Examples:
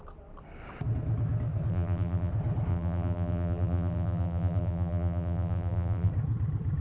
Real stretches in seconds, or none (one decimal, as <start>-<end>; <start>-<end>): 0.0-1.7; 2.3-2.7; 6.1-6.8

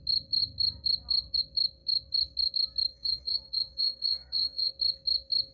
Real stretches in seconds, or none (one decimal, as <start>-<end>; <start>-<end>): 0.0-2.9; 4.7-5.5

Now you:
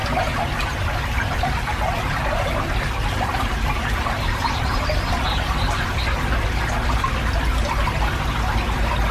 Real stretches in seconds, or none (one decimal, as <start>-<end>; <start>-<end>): 0.0-9.1